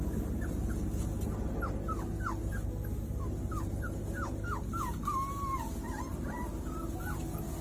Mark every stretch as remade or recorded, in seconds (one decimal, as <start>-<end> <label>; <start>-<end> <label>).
0.0-7.6 recorded